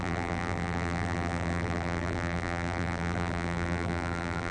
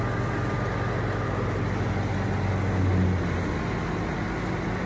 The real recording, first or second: second